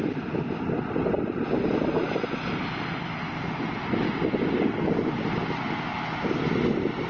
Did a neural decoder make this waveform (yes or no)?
no